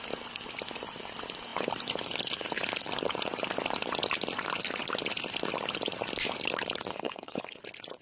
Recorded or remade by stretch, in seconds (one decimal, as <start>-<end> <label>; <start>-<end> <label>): 0.0-6.9 recorded; 6.9-7.6 remade; 7.6-8.0 recorded